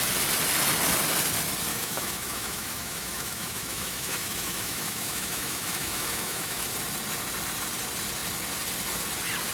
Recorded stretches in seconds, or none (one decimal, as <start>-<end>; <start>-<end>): 0.0-1.7; 6.7-9.5